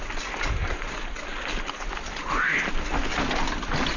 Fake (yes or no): no